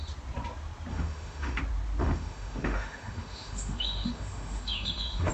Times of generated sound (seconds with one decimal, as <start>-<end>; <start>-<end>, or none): 0.9-1.6; 2.0-5.3